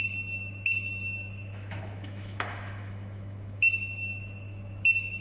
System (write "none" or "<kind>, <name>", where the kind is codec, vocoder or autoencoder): autoencoder, DAC-VAE